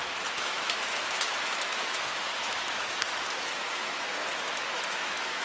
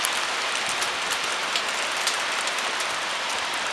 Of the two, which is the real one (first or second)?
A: second